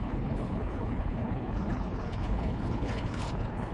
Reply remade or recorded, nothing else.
remade